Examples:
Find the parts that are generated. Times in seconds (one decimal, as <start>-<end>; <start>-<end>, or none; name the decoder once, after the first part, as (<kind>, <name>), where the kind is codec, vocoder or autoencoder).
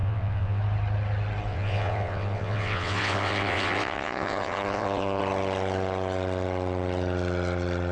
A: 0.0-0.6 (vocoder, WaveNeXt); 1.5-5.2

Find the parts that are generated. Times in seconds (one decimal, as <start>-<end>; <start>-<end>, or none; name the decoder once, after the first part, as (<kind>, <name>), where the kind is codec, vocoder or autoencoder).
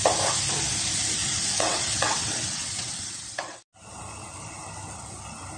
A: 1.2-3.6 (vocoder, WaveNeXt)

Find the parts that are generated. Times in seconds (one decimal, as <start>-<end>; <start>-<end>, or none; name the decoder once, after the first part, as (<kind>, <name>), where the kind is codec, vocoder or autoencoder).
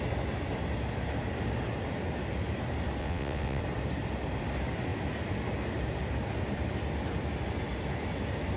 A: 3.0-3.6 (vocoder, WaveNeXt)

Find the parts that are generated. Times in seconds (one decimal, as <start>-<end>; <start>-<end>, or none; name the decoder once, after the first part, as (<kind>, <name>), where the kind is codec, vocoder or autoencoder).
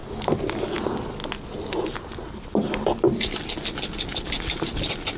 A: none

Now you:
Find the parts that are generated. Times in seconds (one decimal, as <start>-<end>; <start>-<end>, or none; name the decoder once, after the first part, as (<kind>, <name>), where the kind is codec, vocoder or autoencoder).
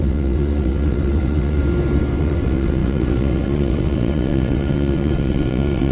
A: 0.0-1.6 (vocoder, WaveNeXt); 2.2-5.9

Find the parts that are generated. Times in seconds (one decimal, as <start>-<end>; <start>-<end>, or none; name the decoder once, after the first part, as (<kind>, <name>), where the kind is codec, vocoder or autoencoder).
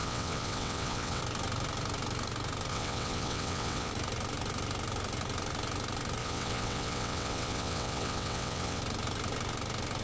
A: 0.0-1.2 (vocoder, WaveNeXt); 2.7-3.9; 6.2-8.8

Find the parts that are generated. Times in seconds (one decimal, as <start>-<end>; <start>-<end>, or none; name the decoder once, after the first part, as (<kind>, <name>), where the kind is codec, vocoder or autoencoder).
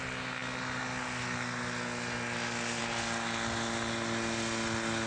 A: none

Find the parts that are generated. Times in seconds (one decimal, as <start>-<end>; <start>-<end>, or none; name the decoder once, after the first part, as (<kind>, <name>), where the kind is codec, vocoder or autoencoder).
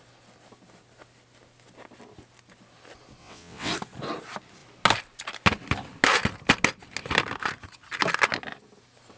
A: 3.2-3.7 (vocoder, WaveNeXt)